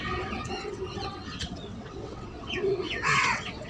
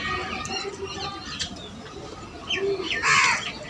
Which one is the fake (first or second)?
first